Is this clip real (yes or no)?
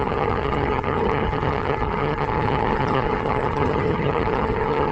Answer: no